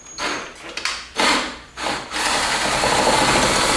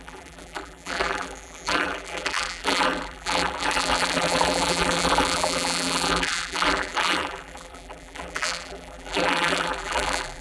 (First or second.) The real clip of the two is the first